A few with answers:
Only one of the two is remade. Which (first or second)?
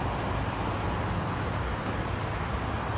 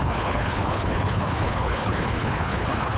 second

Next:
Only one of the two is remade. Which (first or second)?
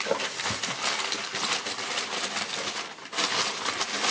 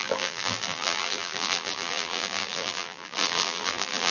second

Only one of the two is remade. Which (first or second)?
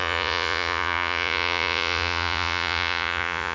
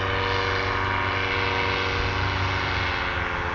first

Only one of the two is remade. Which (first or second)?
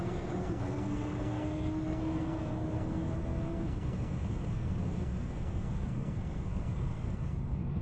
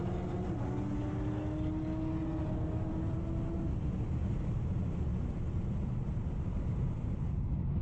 first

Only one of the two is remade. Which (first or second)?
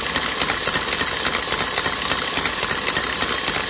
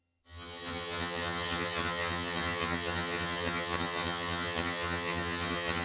second